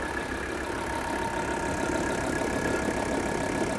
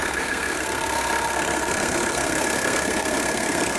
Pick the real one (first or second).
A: first